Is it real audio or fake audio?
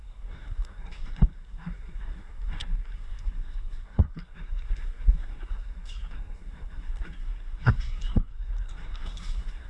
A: fake